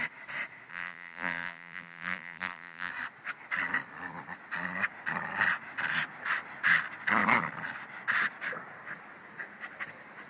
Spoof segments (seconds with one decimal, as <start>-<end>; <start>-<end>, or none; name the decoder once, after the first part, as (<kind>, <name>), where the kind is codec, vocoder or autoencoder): 0.7-2.9 (vocoder, BigVGAN v2)